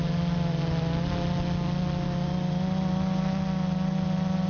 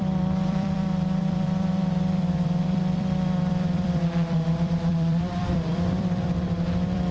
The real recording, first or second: first